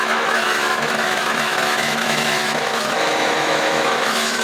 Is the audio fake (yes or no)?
yes